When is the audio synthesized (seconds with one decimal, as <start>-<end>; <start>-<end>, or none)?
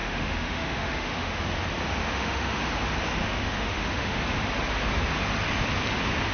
0.0-1.4; 2.0-2.6; 3.2-4.2